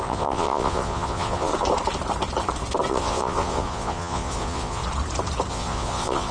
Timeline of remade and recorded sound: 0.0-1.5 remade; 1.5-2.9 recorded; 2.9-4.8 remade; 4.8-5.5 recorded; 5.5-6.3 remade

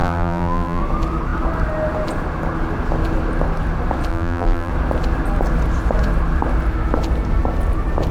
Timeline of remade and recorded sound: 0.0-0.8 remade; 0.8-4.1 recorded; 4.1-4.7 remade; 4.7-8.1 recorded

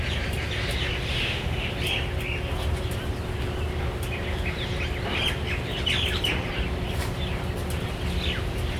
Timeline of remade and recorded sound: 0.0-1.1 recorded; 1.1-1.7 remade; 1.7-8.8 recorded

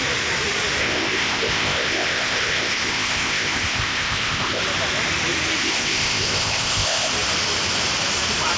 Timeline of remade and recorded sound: 0.0-0.8 recorded; 0.8-4.6 remade; 4.6-5.6 recorded; 5.6-7.1 remade; 7.1-8.6 recorded